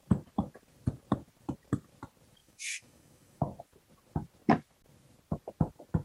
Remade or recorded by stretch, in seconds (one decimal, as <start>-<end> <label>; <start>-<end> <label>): 0.0-2.4 recorded; 2.4-3.4 remade; 3.4-6.0 recorded